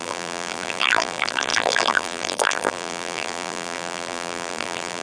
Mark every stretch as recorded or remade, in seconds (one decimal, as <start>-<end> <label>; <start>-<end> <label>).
0.0-5.0 remade